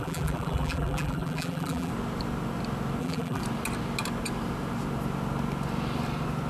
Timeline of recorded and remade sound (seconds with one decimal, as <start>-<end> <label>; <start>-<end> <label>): 0.0-1.9 remade; 1.9-3.0 recorded; 3.0-3.4 remade; 3.4-6.5 recorded